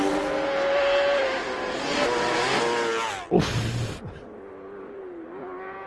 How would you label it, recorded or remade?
recorded